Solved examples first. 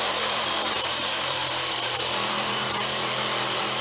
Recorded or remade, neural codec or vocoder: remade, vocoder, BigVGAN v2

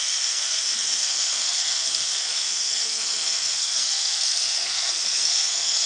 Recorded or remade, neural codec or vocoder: remade, codec, SNAC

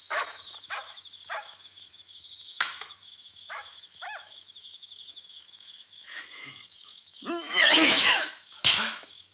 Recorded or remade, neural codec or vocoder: remade, autoencoder, DAC-VAE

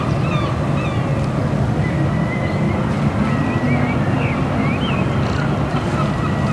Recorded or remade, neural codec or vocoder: recorded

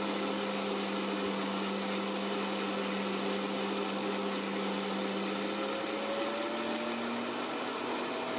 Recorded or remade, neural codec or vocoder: recorded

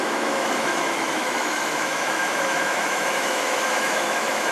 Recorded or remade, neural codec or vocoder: remade, autoencoder, DAC-VAE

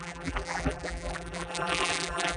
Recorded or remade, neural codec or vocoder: remade, vocoder, BigVGAN v2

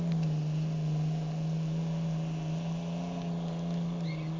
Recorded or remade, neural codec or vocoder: recorded